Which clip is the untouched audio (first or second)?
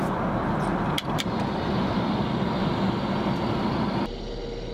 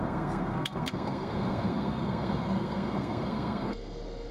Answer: first